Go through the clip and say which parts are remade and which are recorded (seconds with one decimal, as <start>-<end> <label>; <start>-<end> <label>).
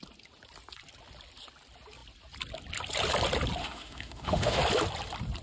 0.0-3.6 recorded; 3.6-4.6 remade; 4.6-5.4 recorded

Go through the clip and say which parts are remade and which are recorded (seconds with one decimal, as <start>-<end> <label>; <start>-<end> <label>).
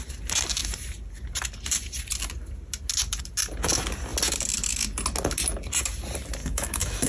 0.0-6.4 recorded; 6.4-7.1 remade